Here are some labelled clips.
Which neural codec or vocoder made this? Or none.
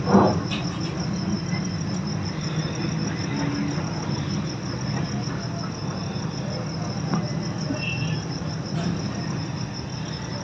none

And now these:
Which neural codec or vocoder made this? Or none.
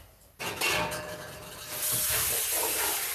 none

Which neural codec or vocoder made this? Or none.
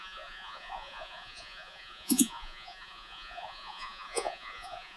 vocoder, Vocos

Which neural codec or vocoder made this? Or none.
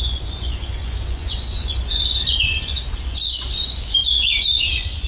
vocoder, Vocos